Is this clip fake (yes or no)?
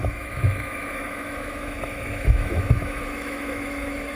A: yes